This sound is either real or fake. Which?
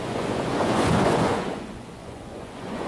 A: fake